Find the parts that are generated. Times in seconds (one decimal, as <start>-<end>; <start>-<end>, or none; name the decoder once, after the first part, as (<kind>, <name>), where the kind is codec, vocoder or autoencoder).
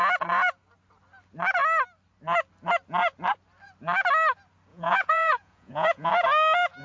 4.7-6.1 (vocoder, Vocos)